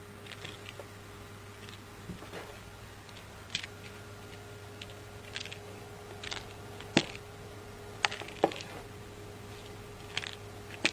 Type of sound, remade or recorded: recorded